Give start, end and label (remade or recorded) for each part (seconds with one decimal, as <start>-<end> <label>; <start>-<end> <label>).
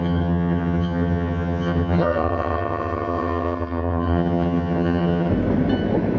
0.0-5.3 remade; 5.3-6.2 recorded